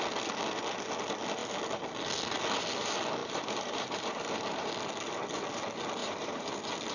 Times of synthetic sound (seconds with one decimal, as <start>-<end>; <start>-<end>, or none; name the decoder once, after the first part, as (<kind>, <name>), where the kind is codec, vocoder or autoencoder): 3.2-4.7 (vocoder, BigVGAN v2); 6.0-6.5